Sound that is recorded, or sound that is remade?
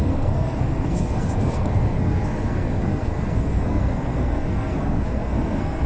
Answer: remade